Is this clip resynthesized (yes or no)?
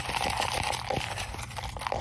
no